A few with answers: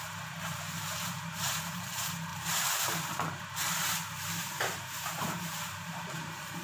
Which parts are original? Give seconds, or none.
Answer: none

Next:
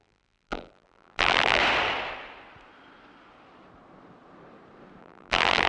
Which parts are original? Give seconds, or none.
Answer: 1.6-5.0

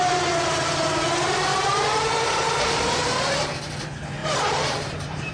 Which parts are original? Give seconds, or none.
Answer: 0.0-1.5; 3.4-4.2

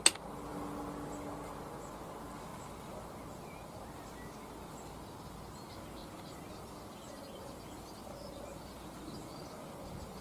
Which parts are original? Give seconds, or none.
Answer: 0.0-2.5; 3.2-6.0; 7.2-10.2

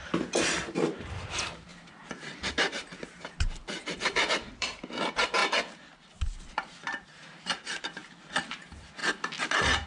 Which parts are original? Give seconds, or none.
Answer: 5.4-6.5; 8.0-8.5; 9.0-9.5